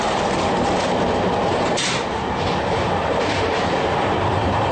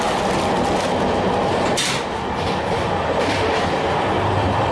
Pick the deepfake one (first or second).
first